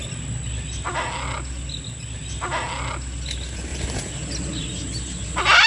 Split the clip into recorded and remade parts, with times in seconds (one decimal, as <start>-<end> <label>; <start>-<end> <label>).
0.0-5.7 recorded